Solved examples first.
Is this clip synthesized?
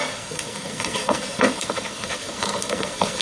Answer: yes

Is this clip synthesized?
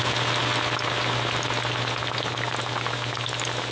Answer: no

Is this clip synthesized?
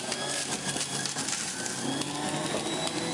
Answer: no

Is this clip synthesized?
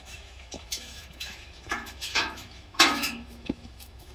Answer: yes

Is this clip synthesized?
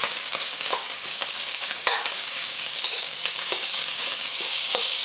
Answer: yes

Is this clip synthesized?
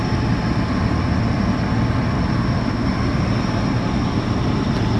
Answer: no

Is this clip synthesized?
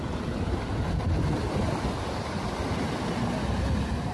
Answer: no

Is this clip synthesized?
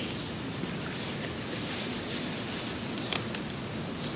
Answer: no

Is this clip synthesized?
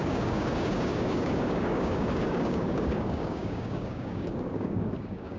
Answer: yes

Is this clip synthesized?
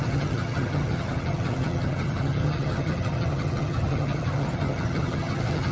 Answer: yes